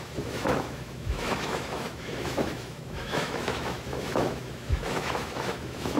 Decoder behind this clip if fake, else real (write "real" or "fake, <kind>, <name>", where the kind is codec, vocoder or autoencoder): fake, autoencoder, DAC-VAE